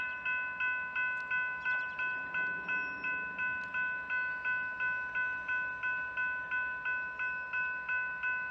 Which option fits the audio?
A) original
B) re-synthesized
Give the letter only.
A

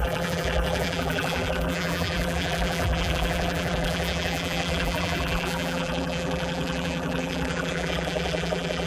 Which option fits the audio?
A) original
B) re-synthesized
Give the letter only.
B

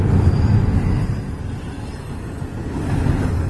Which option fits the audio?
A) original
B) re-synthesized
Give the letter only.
A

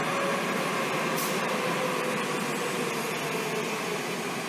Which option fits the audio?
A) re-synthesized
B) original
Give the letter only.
B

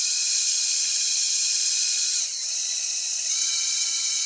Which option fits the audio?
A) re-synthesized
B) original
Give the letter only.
A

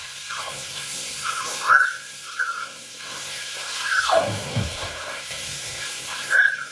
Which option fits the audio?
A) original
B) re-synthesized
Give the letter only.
B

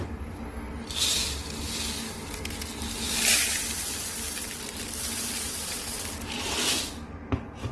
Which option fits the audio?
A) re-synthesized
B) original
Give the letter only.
B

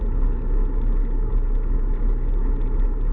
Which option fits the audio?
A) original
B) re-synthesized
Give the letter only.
A